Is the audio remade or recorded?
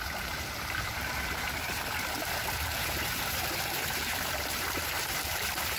remade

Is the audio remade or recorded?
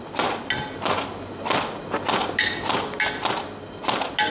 recorded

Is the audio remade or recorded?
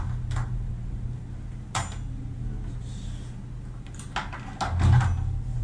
recorded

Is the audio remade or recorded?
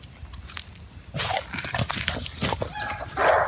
recorded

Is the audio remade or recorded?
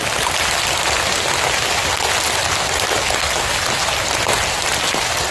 recorded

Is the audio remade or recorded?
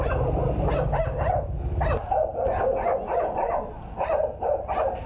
recorded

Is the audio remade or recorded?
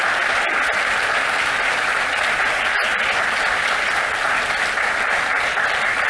recorded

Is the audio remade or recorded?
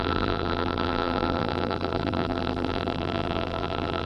remade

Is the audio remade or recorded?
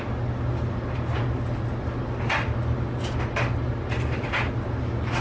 recorded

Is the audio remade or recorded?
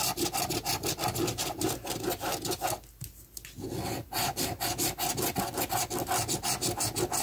recorded